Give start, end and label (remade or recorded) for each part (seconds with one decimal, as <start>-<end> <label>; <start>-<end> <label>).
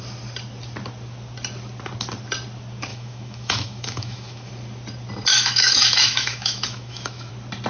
0.0-2.9 recorded; 2.9-4.5 remade; 4.5-5.3 recorded; 5.3-7.3 remade; 7.3-7.7 recorded